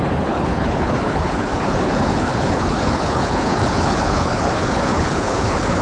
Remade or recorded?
remade